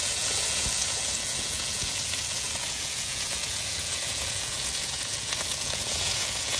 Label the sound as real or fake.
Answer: fake